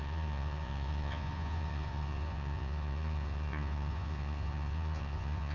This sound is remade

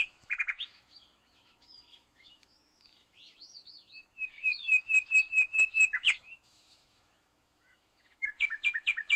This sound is remade